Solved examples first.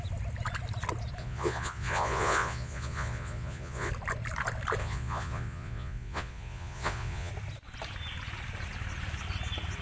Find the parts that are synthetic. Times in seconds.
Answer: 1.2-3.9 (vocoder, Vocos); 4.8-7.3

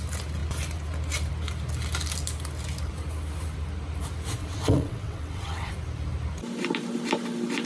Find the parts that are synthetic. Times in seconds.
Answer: 4.4-5.7 (vocoder, WaveNeXt)

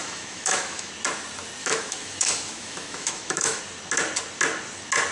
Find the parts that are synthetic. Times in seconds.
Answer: 0.0-0.9 (autoencoder, DAC-VAE); 1.6-3.6

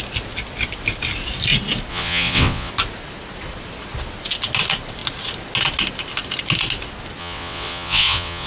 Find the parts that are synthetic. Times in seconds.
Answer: 1.9-2.7 (vocoder, WaveNeXt); 7.2-8.5

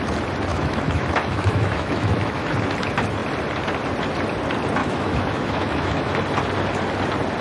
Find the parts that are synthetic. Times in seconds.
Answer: 0.5-2.5 (autoencoder, DAC-VAE); 4.8-6.1

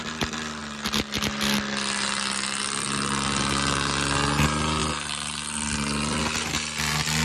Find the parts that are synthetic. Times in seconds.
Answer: 4.8-6.2 (vocoder, BigVGAN v2)

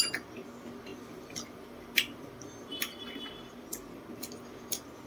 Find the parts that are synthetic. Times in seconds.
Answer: 0.9-2.3 (vocoder, BigVGAN v2)